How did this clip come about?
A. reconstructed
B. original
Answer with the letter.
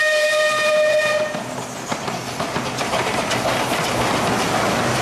B